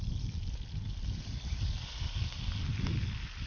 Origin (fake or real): real